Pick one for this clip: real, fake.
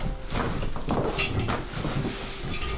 real